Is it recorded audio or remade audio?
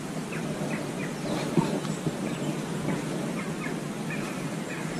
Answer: recorded